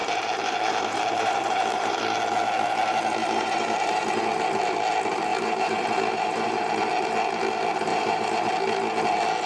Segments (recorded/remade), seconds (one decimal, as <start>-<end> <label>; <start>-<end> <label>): 0.0-2.0 remade; 2.0-3.2 recorded; 3.2-4.1 remade; 4.1-5.3 recorded; 5.3-7.1 remade; 7.1-7.9 recorded; 7.9-8.5 remade; 8.5-9.5 recorded